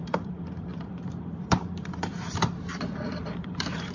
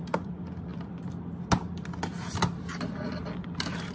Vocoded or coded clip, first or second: first